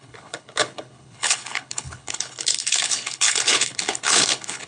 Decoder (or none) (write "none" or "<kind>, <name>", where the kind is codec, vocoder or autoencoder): codec, HILCodec